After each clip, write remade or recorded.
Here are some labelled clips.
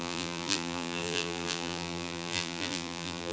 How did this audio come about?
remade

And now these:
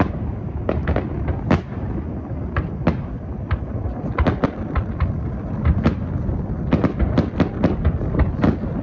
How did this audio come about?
recorded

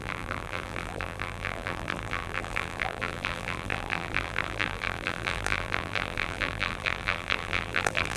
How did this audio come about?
remade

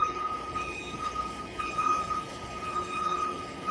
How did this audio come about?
remade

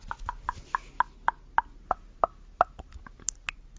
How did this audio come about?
recorded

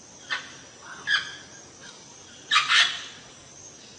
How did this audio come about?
recorded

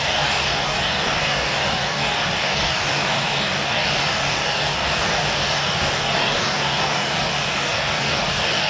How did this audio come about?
remade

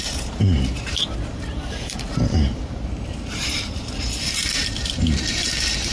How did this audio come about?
remade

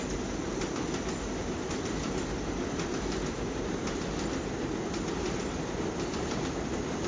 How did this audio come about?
recorded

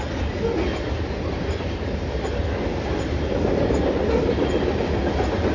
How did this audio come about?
recorded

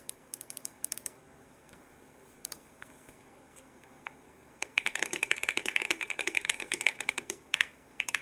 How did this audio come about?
remade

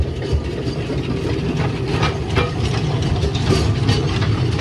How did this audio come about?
recorded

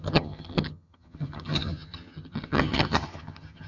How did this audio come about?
remade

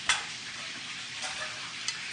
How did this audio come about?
recorded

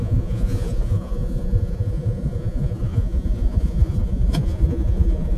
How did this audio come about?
remade